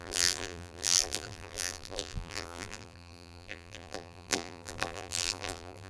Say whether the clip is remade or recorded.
remade